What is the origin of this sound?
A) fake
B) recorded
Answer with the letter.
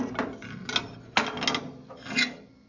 B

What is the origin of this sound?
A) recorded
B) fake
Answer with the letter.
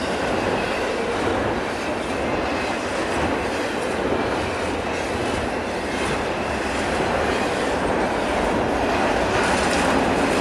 A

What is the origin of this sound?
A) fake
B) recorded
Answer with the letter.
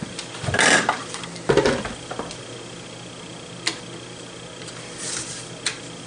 B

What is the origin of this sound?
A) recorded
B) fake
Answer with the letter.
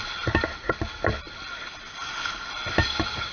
A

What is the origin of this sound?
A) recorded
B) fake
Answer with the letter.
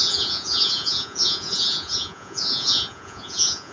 B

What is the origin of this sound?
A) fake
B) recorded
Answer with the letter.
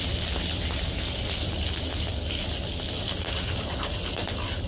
B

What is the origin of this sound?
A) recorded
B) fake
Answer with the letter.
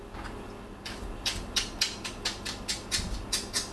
A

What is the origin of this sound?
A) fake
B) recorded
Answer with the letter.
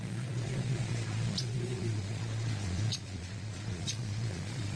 A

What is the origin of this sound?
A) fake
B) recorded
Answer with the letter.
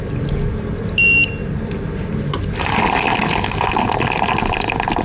B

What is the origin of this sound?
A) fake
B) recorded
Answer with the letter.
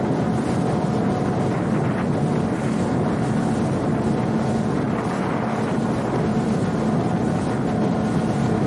B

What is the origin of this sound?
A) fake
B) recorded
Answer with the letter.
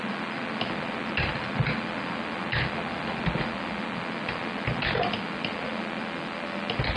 B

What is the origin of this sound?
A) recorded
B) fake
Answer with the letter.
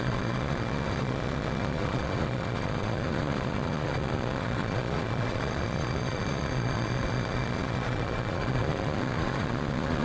B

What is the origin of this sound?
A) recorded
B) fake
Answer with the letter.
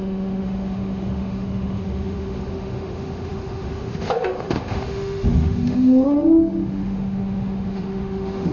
B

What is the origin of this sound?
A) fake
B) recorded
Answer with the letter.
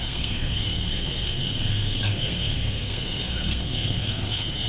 A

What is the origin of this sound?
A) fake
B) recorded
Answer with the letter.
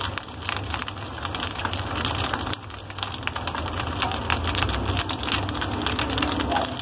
B